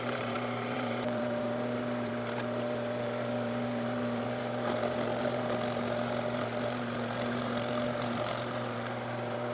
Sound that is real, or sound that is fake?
fake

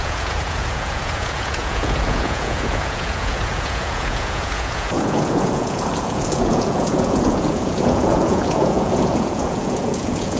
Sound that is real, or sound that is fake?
fake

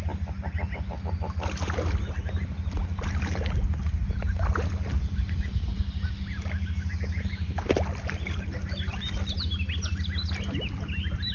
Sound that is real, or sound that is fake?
real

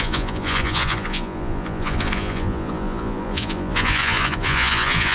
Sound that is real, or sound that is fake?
fake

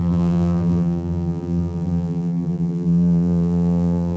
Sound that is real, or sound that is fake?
fake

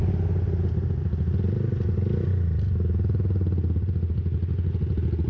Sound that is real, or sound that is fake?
real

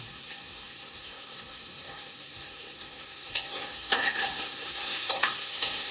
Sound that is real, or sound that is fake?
fake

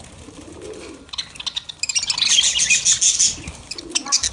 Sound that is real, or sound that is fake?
real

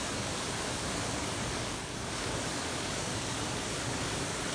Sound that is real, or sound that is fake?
fake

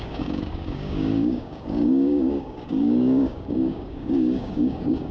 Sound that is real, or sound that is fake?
fake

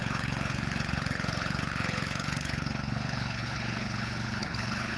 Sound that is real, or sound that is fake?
fake